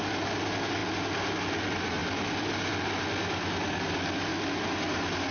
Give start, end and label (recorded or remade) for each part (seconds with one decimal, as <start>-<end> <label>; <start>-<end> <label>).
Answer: 0.0-5.3 recorded